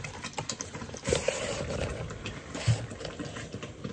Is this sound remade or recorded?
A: recorded